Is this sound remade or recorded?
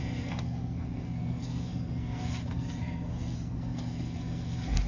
remade